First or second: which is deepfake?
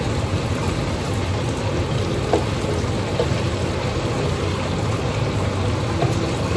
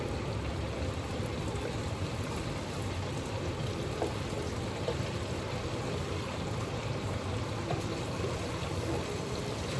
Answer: second